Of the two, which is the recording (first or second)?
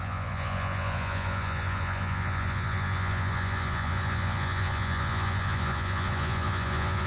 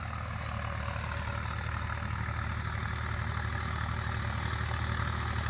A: second